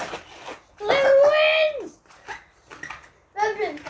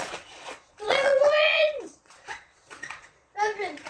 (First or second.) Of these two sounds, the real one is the first